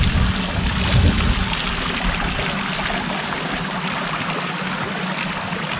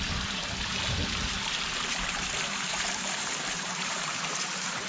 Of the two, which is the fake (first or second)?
second